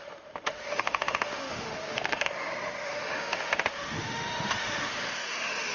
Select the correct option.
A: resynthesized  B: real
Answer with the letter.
A